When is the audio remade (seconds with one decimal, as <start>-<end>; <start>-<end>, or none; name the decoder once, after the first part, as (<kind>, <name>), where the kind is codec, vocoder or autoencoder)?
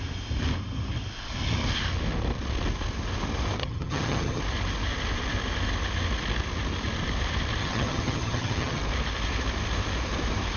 3.6-4.4 (vocoder, HiFi-GAN); 7.6-8.8